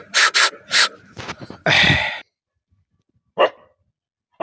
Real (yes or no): yes